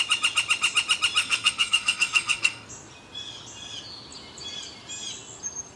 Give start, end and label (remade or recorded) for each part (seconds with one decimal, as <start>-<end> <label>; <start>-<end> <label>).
0.0-1.2 recorded; 1.2-2.7 remade; 2.7-5.8 recorded